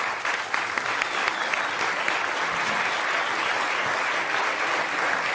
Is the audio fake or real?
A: real